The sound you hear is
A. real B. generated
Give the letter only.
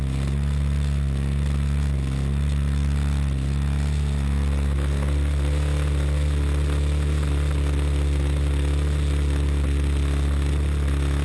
A